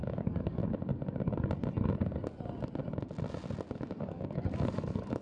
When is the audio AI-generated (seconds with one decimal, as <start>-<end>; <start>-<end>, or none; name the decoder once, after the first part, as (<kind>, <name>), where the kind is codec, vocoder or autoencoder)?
0.0-0.6 (codec, DAC); 3.7-5.2